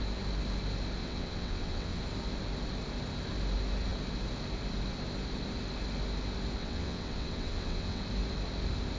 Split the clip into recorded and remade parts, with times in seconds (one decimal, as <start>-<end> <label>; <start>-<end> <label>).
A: 0.0-1.0 recorded; 1.0-2.0 remade; 2.0-6.6 recorded; 6.6-8.0 remade; 8.0-9.0 recorded